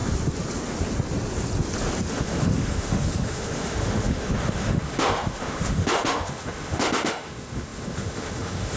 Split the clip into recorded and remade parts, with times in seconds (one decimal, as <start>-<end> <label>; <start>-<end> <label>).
0.0-2.1 recorded; 2.1-8.8 remade

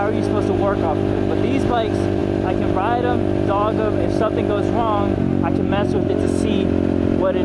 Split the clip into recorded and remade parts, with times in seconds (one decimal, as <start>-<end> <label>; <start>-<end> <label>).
0.0-7.4 recorded

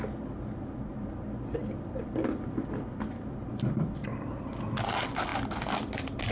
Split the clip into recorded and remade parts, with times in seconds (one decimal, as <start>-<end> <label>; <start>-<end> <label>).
0.0-0.9 recorded; 0.9-4.5 remade; 4.5-6.3 recorded

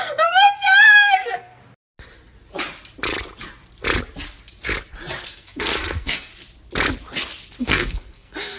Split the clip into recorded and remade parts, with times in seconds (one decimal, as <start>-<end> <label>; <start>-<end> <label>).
0.0-1.6 remade; 1.6-5.3 recorded; 5.3-6.3 remade; 6.3-7.6 recorded; 7.6-8.6 remade

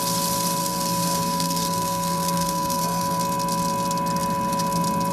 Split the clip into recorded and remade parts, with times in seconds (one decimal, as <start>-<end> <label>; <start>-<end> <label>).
0.0-0.6 recorded; 0.6-3.2 remade; 3.2-5.1 recorded

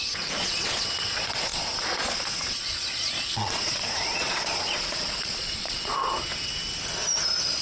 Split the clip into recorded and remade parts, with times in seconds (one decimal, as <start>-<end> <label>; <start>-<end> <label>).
0.0-5.9 remade; 5.9-7.6 recorded

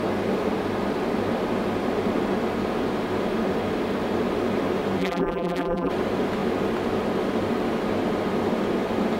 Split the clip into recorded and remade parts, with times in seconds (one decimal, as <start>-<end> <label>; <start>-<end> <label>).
0.0-5.0 recorded; 5.0-5.9 remade; 5.9-9.2 recorded